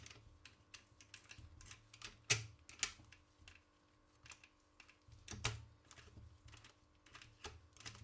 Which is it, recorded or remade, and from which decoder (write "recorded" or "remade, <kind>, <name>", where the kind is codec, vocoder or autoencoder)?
recorded